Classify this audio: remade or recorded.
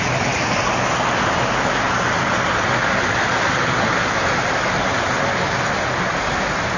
recorded